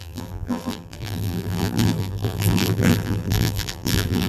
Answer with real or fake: fake